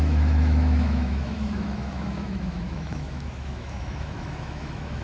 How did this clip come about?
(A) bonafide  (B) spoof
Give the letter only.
B